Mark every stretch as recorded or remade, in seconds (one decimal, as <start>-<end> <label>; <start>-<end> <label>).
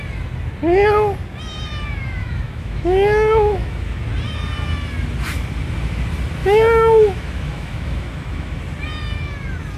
0.0-2.2 recorded; 2.2-4.0 remade; 4.0-6.4 recorded; 6.4-8.6 remade; 8.6-9.8 recorded